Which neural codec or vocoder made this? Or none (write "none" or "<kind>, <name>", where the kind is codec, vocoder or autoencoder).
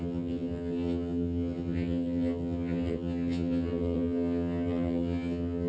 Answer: vocoder, HiFi-GAN